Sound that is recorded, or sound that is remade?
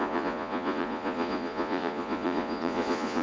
remade